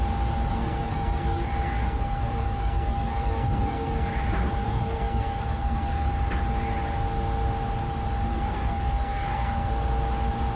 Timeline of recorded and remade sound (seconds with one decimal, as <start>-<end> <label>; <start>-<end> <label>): 0.0-0.5 recorded; 0.5-4.1 remade; 4.1-4.6 recorded; 4.6-6.1 remade; 6.1-8.3 recorded; 8.3-9.7 remade; 9.7-10.6 recorded